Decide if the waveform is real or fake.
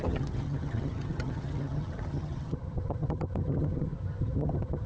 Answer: fake